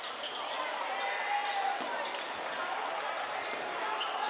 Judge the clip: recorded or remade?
recorded